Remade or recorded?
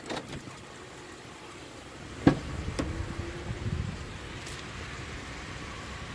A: recorded